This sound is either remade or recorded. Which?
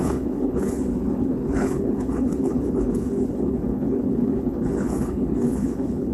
remade